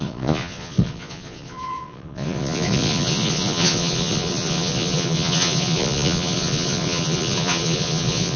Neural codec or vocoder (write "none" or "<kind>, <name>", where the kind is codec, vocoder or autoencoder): vocoder, Vocos